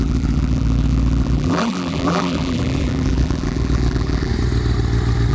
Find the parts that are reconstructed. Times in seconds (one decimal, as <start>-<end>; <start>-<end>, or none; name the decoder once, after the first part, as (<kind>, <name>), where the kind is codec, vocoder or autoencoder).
0.0-4.3 (vocoder, BigVGAN v2)